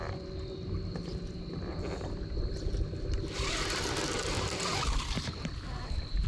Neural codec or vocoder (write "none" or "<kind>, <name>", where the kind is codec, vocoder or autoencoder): none